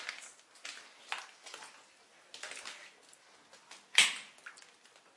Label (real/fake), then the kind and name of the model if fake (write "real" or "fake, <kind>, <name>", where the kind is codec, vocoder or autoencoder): real